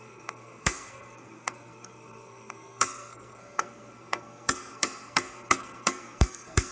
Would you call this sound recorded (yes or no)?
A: no